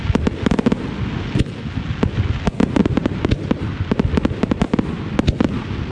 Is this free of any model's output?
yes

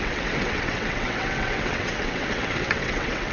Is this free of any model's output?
no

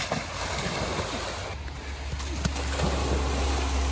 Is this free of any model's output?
yes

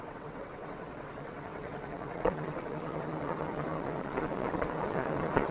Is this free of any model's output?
no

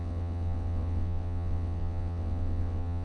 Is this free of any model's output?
no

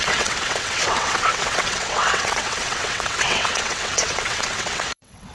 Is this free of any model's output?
no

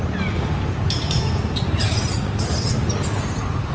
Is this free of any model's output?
yes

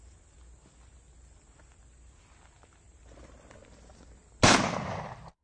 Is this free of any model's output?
yes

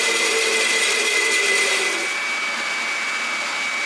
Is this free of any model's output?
yes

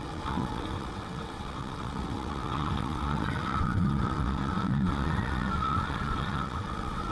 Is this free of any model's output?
no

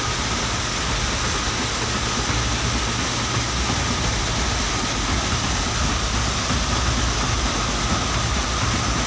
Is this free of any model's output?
yes